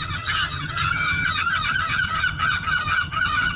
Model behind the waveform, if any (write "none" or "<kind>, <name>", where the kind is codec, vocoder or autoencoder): vocoder, HiFi-GAN